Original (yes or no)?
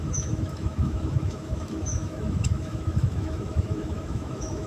no